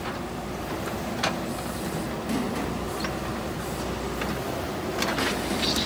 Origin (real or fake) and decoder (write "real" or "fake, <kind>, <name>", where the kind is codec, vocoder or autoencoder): real